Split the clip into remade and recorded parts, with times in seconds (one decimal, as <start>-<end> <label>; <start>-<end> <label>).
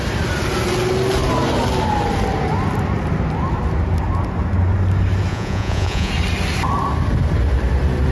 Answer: 0.0-5.3 recorded; 5.3-6.1 remade; 6.1-8.1 recorded